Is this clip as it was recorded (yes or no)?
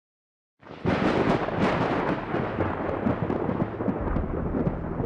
yes